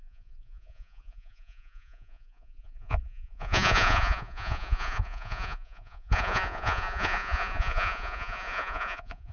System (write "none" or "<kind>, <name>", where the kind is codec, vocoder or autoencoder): vocoder, Vocos